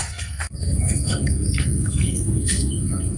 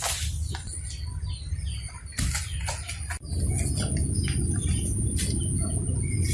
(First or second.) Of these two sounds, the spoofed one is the first